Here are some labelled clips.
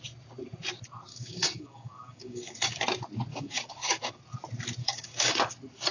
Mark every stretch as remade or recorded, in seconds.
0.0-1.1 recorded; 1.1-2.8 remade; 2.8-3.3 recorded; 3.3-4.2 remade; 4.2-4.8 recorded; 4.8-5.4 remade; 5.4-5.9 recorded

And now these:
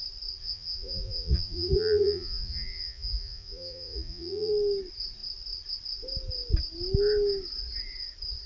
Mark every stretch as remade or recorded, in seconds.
0.0-0.4 recorded; 0.4-4.5 remade; 4.5-8.5 recorded